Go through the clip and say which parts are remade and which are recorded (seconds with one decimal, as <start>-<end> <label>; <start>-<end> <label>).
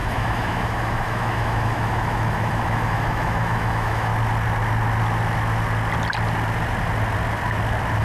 0.0-4.1 remade; 4.1-8.0 recorded